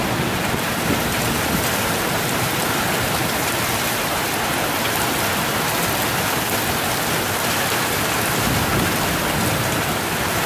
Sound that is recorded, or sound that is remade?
recorded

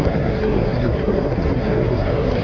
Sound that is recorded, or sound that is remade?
remade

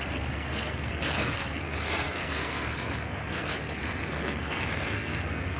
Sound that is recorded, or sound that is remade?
remade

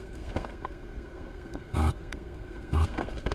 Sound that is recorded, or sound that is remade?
remade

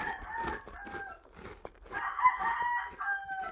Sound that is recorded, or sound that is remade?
recorded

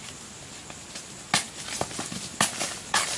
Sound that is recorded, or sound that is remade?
recorded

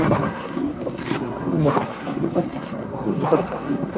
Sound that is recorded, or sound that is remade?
remade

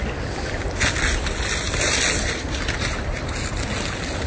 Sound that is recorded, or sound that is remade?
recorded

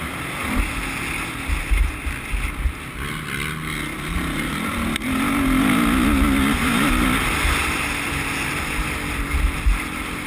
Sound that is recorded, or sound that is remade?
recorded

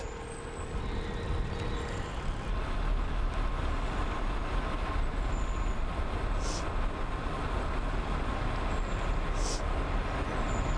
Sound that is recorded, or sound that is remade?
recorded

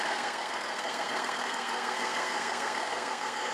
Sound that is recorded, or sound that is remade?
remade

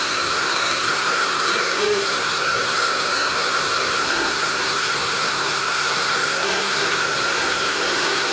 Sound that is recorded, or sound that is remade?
remade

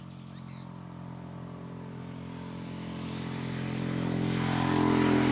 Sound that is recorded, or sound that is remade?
recorded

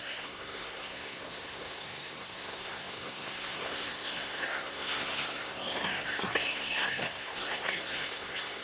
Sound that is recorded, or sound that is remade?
remade